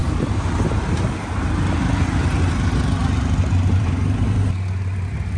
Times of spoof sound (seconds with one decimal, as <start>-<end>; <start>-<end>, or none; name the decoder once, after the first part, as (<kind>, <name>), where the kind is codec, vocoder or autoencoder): none